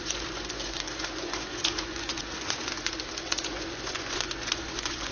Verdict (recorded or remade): remade